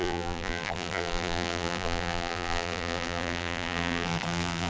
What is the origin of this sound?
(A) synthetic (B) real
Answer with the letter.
A